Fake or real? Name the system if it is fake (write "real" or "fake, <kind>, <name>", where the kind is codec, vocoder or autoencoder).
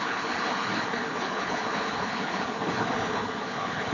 fake, codec, HILCodec